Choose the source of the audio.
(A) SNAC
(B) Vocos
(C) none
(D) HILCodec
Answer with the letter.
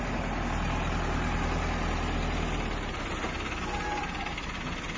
C